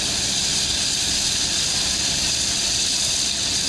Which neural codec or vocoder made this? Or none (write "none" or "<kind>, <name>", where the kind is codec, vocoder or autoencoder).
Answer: none